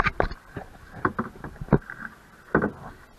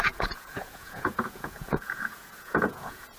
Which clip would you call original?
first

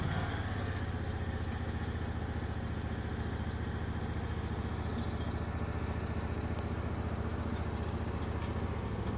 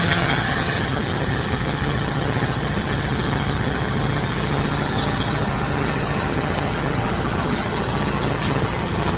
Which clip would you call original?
first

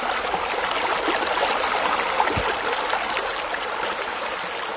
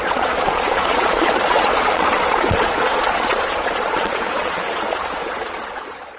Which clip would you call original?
first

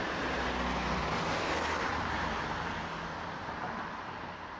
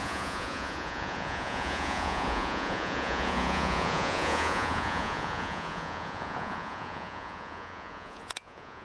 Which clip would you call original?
first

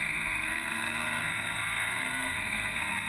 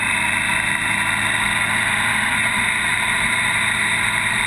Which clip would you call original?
second